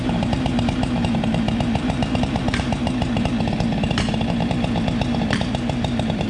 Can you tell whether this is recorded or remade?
remade